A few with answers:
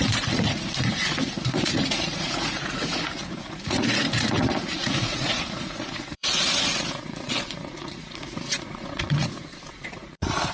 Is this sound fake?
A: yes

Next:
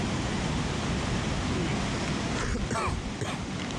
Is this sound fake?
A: no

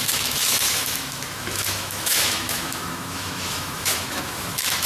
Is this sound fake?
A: yes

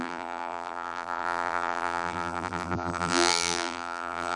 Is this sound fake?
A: yes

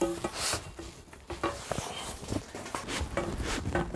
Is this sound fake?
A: no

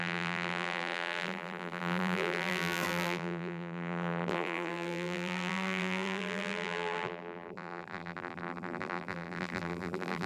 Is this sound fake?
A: yes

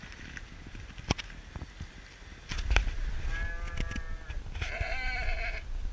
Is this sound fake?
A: no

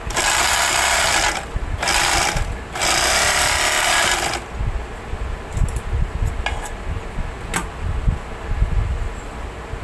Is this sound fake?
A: no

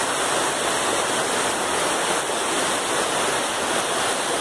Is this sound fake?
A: no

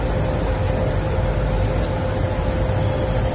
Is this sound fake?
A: no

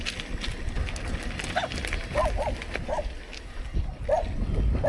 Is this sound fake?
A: no